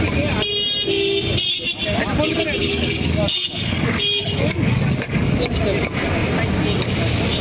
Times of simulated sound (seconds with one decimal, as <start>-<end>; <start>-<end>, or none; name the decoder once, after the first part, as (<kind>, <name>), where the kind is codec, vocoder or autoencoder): 2.6-5.4 (codec, DAC)